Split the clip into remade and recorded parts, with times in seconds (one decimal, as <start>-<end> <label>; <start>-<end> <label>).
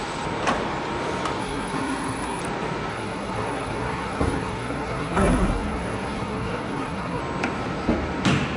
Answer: 0.0-1.4 recorded; 1.4-2.4 remade; 2.4-2.9 recorded; 2.9-7.2 remade; 7.2-8.6 recorded